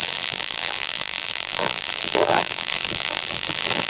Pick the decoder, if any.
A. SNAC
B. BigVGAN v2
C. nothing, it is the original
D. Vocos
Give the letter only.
B